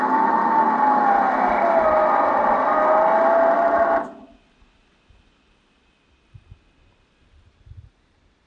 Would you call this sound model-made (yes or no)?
no